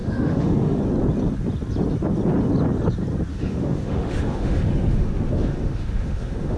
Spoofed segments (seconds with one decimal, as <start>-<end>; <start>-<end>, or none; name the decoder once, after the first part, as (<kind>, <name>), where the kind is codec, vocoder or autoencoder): 0.0-0.8 (autoencoder, DAC-VAE); 3.3-6.6